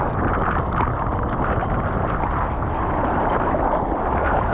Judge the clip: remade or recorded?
recorded